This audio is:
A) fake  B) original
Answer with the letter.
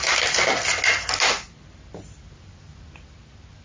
B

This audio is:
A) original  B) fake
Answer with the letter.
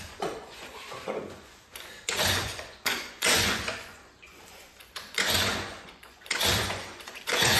B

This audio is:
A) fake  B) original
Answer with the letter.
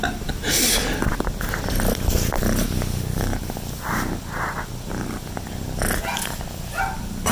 B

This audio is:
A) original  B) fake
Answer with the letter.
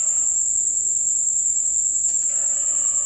A